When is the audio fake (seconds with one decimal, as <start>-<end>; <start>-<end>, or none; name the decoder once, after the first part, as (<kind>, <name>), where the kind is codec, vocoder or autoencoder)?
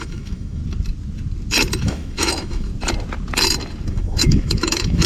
0.0-0.6 (autoencoder, DAC-VAE); 1.8-2.7; 3.9-5.1